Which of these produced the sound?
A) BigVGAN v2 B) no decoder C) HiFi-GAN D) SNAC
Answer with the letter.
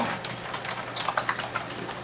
B